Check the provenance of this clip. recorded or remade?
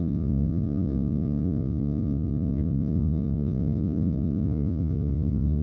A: remade